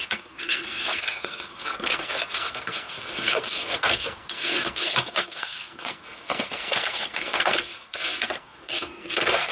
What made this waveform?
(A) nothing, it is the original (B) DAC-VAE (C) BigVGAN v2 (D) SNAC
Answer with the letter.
D